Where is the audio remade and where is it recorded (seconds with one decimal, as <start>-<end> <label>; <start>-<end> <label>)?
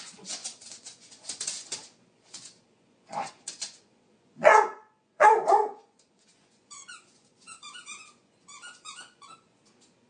0.0-10.1 remade